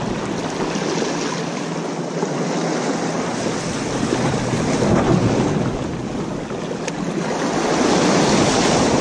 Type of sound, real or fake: real